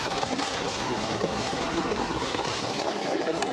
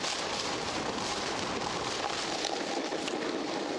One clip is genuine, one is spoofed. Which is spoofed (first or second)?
first